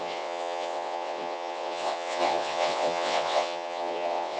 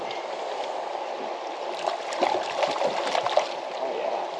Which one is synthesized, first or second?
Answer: first